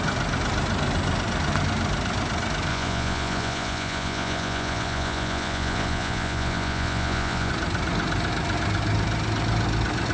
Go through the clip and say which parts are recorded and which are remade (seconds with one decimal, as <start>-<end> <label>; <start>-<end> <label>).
0.0-2.7 recorded; 2.7-7.5 remade; 7.5-10.1 recorded